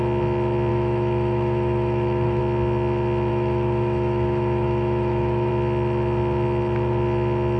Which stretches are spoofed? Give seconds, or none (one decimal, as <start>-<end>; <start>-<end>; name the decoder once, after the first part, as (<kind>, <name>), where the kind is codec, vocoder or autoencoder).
0.7-2.4 (autoencoder, DAC-VAE); 3.3-5.5